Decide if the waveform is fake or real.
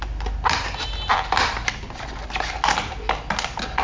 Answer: real